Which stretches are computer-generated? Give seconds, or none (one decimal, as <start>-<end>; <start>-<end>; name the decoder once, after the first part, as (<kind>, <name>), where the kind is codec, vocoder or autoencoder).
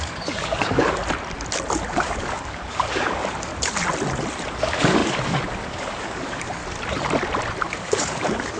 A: 0.0-1.0 (codec, DAC); 1.9-3.5; 4.5-6.6; 7.7-8.6